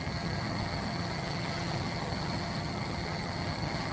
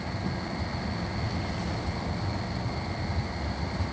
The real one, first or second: second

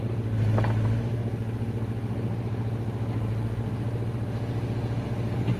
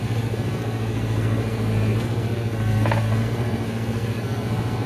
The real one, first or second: first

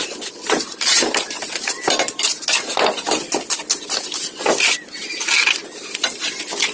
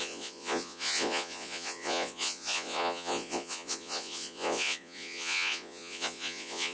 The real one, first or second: first